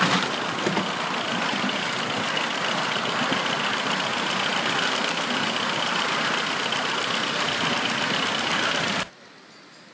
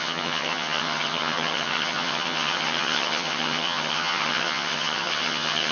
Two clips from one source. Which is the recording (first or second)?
first